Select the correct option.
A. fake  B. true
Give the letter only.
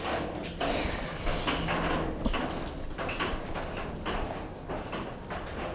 B